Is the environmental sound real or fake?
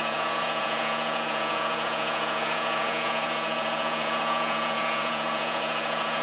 fake